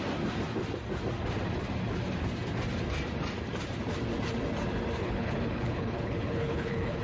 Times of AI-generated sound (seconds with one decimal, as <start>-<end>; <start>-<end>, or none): 5.0-7.0